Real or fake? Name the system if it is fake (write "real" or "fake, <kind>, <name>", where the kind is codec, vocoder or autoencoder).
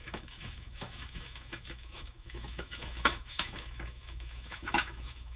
fake, autoencoder, DAC-VAE